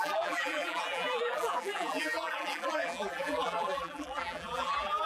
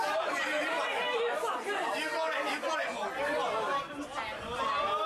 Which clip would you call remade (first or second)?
first